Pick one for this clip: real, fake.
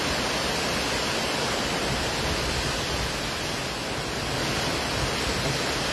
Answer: real